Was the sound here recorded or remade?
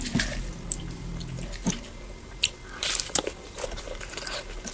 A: recorded